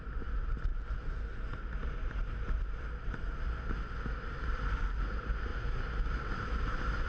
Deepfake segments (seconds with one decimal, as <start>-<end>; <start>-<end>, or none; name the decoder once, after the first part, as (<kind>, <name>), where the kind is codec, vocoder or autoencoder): none